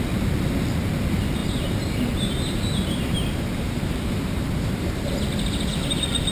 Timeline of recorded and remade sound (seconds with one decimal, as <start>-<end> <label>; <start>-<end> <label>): 0.0-1.4 recorded; 1.4-5.2 remade; 5.2-6.3 recorded